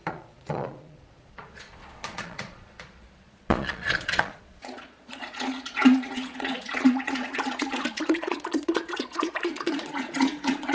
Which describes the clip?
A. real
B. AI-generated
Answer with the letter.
B